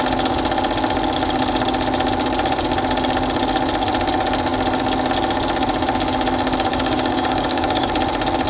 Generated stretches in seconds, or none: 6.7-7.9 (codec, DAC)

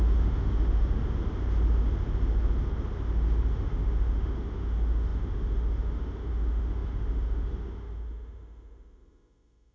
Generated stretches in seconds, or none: 0.0-1.0 (autoencoder, DAC-VAE); 3.5-9.7

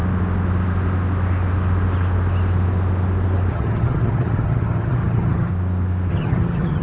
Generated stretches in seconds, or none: 3.5-5.5 (vocoder, HiFi-GAN); 6.1-6.8

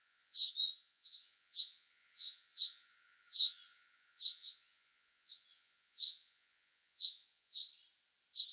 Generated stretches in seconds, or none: 0.0-7.6 (vocoder, Vocos)

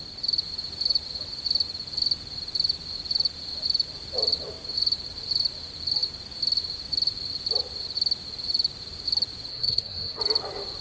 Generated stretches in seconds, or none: 9.5-10.2 (codec, SNAC)

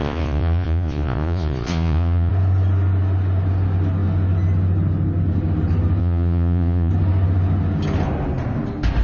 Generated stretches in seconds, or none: 0.0-2.3 (vocoder, Vocos); 6.0-6.9

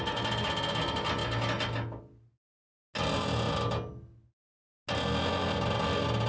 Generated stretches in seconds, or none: none

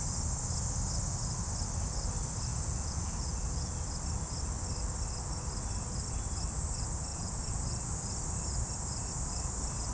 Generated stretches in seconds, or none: 2.5-3.7 (vocoder, Vocos); 7.1-7.6